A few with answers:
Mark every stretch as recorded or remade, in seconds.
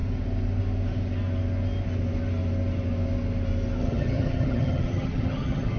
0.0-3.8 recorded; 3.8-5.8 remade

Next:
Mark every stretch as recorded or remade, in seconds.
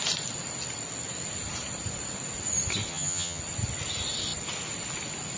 0.0-2.9 recorded; 2.9-3.4 remade; 3.4-5.4 recorded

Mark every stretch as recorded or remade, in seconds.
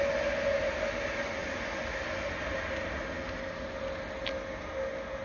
0.0-5.2 recorded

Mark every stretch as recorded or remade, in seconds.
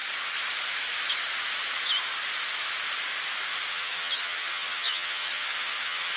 0.0-3.7 recorded; 3.7-6.2 remade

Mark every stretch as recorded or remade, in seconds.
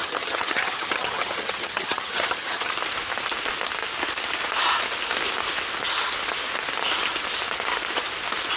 0.0-2.7 remade; 2.7-8.6 recorded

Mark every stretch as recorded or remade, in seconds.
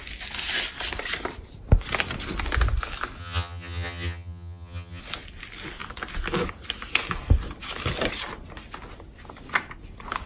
0.0-3.2 recorded; 3.2-5.0 remade; 5.0-10.3 recorded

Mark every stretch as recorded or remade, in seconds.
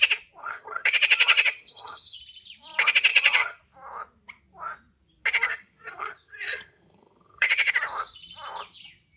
0.0-0.4 recorded; 0.4-2.2 remade; 2.2-3.1 recorded; 3.1-3.6 remade; 3.6-5.5 recorded; 5.5-7.7 remade; 7.7-9.2 recorded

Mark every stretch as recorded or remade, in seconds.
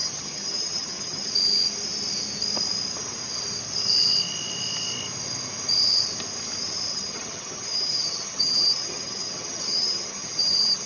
0.0-1.3 remade; 1.3-6.9 recorded; 6.9-10.9 remade